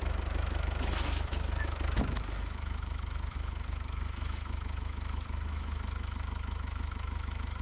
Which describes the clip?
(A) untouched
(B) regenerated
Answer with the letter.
B